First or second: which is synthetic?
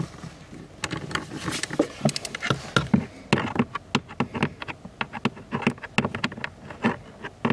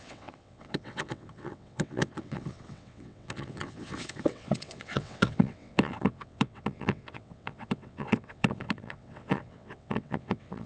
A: second